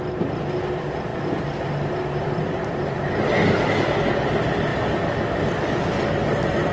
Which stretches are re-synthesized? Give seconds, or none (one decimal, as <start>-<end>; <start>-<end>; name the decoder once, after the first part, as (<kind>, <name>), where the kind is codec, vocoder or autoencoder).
none